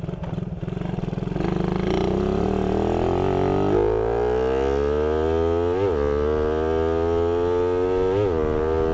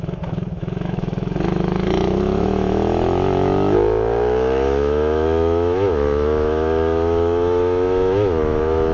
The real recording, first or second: first